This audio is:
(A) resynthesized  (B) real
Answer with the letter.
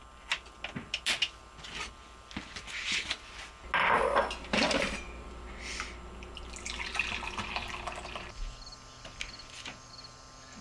B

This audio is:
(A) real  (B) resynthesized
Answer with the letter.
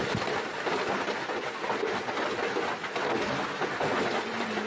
A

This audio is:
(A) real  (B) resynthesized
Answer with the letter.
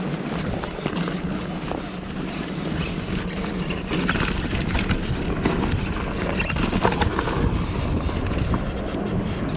A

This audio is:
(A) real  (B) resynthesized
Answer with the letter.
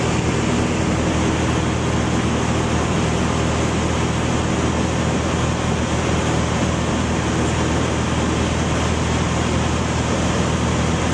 A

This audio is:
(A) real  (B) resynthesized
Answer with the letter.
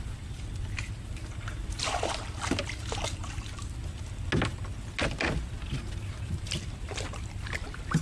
A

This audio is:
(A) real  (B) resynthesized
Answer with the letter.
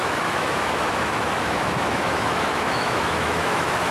B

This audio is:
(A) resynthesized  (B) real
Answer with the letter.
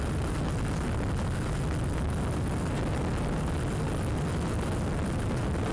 B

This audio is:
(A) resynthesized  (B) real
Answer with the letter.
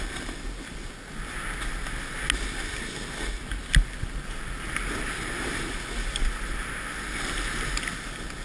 B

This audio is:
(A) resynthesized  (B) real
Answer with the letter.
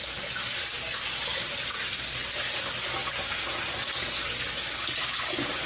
B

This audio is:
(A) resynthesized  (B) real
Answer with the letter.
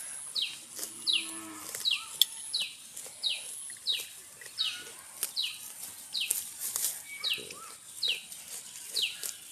B